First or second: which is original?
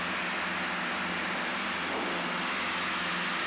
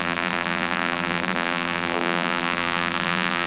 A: first